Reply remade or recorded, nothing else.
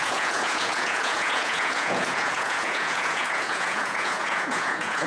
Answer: remade